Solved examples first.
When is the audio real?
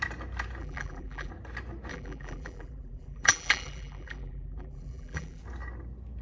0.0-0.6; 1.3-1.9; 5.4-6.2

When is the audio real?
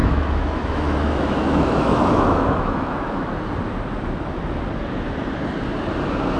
3.3-6.4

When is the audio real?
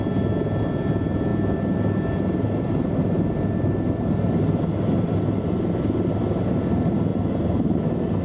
0.0-8.2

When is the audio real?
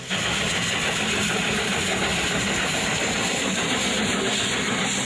0.0-5.0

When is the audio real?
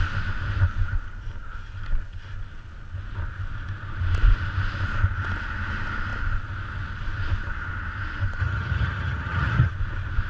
0.0-8.4; 9.7-10.3